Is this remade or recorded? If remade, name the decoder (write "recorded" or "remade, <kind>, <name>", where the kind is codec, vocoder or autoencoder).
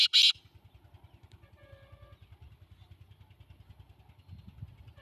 recorded